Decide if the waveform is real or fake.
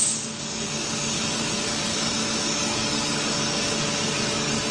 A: fake